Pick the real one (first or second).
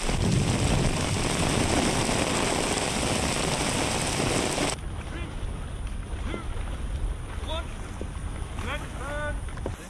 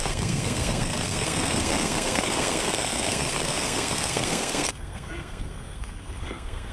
first